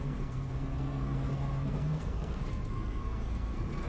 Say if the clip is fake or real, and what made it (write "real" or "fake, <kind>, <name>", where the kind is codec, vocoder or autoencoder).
fake, codec, SNAC